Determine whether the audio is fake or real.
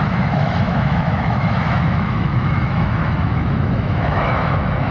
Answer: fake